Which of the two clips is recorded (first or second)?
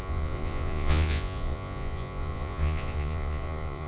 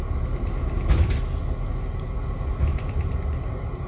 second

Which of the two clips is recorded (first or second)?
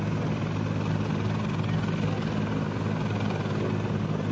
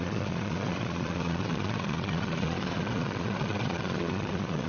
first